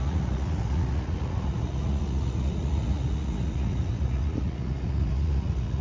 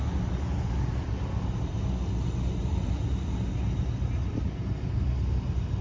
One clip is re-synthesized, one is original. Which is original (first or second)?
second